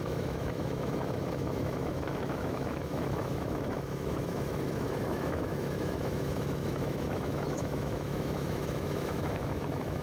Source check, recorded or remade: remade